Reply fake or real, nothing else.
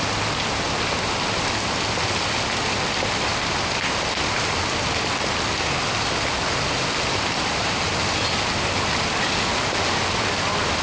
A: real